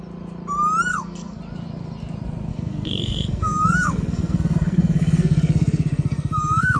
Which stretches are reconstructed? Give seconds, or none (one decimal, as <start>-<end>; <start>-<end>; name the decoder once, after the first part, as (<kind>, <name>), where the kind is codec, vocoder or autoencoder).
0.9-1.4 (codec, SNAC); 2.5-6.8